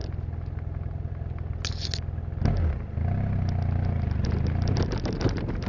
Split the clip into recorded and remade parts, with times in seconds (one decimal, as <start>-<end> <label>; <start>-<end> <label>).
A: 0.0-5.7 recorded